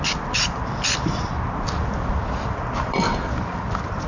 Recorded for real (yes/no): yes